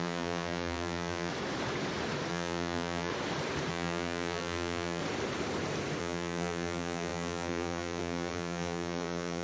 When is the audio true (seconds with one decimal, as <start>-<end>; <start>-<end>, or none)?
1.3-2.3; 3.1-3.7; 5.0-6.0